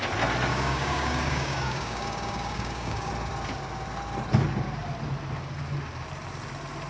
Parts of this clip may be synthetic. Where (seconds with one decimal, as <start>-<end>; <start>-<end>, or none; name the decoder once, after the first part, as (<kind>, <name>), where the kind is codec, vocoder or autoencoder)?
0.5-3.1 (codec, DAC)